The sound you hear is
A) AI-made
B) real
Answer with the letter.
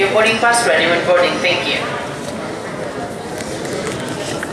B